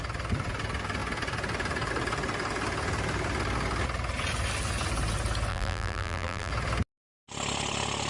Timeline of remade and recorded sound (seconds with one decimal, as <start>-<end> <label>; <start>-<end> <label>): 0.0-5.5 recorded; 5.5-6.5 remade; 6.5-8.1 recorded